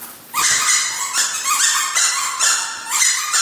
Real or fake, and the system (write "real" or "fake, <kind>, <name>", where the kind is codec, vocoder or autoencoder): real